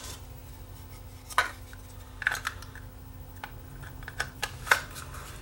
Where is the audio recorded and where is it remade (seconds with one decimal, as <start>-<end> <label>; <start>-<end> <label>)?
0.0-0.4 remade; 0.4-3.6 recorded; 3.6-5.4 remade